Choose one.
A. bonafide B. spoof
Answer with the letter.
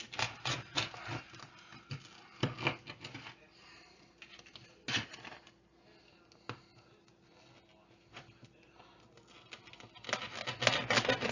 A